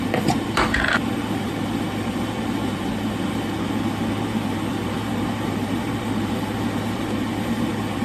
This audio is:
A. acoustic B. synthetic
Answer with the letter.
B